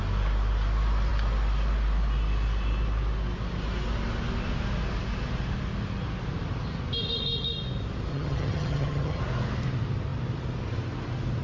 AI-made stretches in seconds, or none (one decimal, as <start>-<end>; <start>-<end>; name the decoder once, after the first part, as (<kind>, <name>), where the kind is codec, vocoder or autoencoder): 8.1-9.2 (vocoder, HiFi-GAN)